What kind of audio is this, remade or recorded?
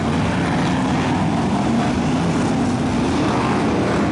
recorded